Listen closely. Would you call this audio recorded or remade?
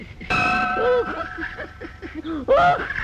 recorded